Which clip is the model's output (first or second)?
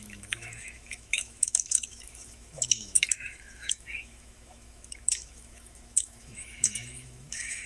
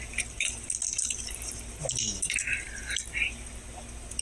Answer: first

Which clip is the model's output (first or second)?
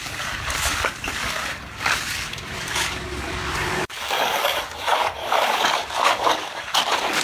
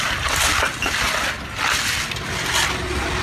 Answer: first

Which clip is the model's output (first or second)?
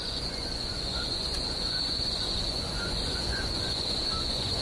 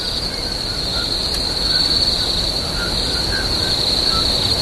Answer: first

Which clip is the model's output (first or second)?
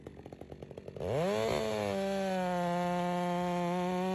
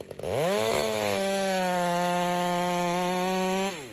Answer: second